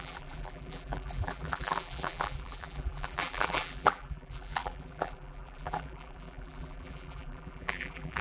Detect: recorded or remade remade